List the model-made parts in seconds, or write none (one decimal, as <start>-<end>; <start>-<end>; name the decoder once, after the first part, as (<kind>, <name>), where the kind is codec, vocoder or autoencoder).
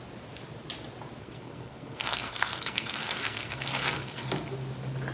1.2-4.3 (codec, SNAC)